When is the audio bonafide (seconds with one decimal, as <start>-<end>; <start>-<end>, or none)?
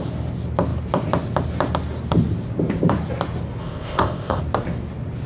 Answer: 0.0-3.6; 4.4-5.3